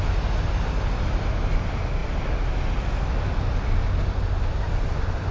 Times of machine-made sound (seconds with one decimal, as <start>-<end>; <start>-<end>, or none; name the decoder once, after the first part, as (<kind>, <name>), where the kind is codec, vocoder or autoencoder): none